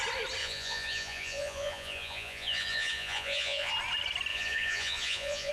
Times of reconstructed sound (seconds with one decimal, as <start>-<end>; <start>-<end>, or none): 0.4-3.7; 4.3-5.5